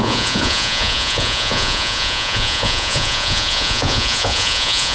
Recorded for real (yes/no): no